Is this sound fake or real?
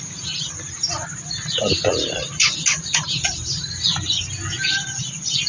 real